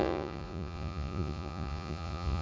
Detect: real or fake fake